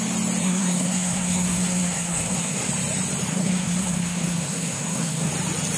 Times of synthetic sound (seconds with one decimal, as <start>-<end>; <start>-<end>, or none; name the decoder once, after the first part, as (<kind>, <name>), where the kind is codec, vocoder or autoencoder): 0.4-2.7 (codec, SNAC); 3.3-5.3